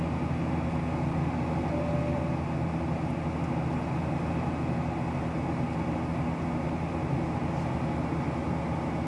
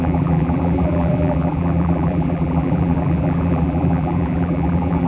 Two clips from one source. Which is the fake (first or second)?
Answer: second